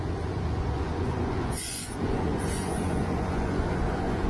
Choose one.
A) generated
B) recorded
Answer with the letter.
A